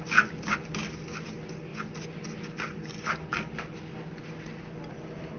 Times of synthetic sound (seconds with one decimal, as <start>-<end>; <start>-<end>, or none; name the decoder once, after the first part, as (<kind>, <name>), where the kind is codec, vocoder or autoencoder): none